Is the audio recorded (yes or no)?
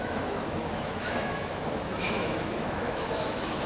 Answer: no